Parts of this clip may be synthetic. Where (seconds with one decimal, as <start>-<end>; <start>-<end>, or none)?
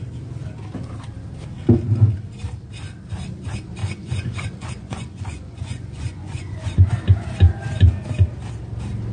3.8-6.9